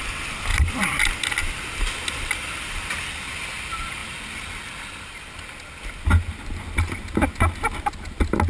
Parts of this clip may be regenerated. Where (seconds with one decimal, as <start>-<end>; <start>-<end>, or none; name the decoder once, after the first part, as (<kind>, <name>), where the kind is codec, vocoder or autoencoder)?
0.5-2.9 (vocoder, BigVGAN v2)